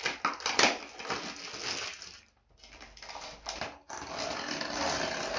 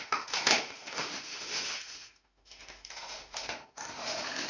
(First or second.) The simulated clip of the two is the second